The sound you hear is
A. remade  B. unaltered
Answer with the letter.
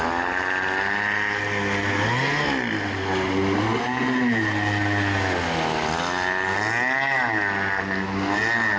B